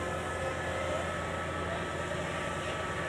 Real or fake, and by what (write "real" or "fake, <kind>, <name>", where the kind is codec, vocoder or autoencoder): real